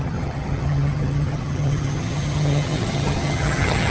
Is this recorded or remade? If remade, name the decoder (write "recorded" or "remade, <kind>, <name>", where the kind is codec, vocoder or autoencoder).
remade, vocoder, HiFi-GAN